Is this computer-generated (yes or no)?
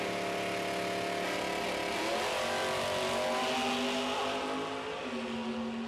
no